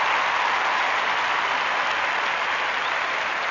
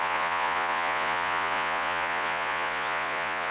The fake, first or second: second